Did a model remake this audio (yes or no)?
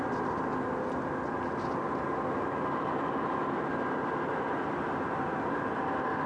no